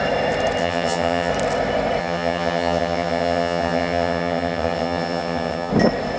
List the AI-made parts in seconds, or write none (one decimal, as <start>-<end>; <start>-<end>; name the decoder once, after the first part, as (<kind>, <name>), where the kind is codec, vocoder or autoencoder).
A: 0.6-1.3 (vocoder, HiFi-GAN); 2.0-5.7